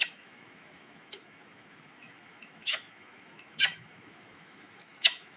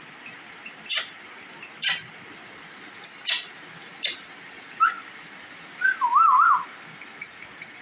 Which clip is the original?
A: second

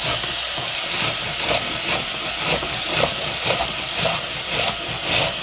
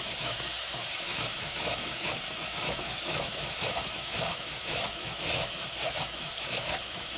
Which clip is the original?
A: first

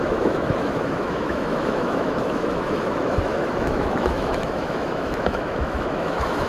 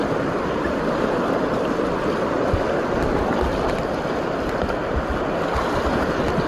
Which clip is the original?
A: second